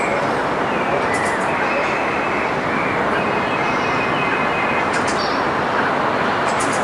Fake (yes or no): no